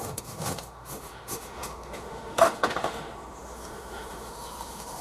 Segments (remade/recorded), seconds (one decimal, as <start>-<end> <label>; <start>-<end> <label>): 0.0-5.0 remade